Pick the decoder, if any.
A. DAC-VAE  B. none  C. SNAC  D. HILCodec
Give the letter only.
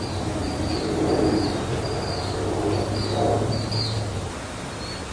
B